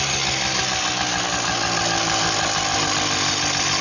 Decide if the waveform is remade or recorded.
recorded